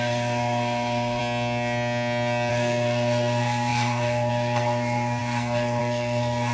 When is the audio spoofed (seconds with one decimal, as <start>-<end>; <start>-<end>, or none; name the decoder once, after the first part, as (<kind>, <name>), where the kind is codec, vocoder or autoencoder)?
0.0-1.2 (codec, SNAC); 2.5-6.5